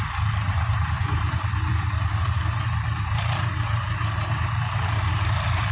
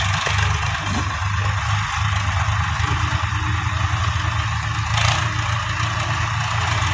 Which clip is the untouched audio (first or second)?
second